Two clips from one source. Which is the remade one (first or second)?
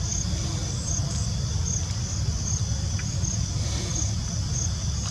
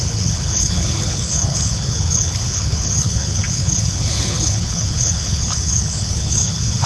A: second